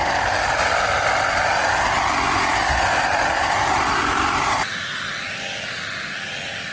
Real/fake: real